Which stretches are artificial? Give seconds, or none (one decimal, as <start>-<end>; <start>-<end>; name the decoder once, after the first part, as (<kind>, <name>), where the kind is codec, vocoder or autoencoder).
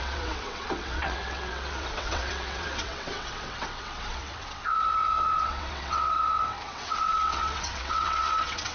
0.0-8.7 (vocoder, WaveNeXt)